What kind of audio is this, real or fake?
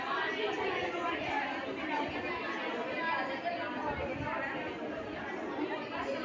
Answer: real